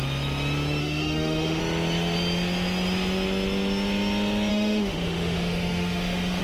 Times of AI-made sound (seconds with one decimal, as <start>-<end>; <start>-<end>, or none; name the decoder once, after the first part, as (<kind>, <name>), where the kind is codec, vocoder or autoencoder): 0.8-1.6 (autoencoder, DAC-VAE); 4.5-6.4